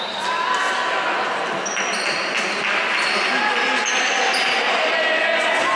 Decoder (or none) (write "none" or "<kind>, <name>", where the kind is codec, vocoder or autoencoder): none